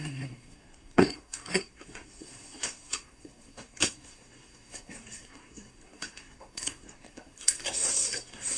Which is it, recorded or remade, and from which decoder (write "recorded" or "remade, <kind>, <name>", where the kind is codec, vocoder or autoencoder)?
remade, codec, SNAC